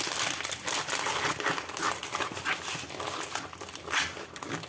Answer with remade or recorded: recorded